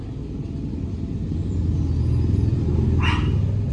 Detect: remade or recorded recorded